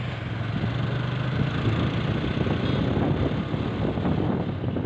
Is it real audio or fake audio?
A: real